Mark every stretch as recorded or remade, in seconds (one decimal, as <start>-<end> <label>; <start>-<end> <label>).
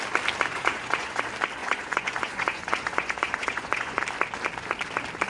0.0-0.5 recorded; 0.5-1.2 remade; 1.2-1.6 recorded; 1.6-4.0 remade; 4.0-5.3 recorded